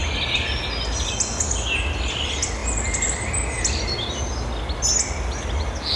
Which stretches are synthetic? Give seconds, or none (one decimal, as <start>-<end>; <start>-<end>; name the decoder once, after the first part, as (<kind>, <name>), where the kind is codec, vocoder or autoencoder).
none